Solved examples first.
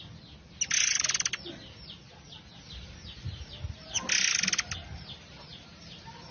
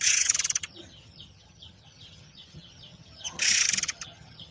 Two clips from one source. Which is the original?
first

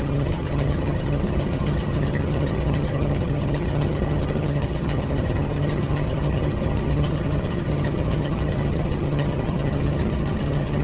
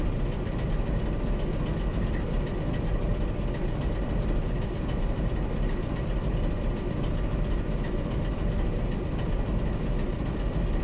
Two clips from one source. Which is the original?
second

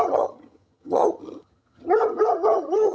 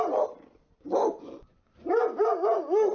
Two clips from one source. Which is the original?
second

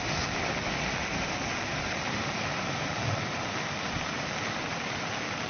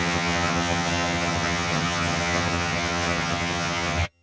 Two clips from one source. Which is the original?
first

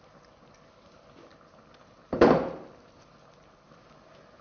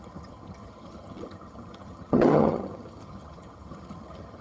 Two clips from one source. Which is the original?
first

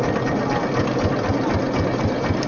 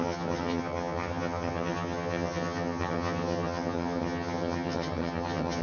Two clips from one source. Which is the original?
first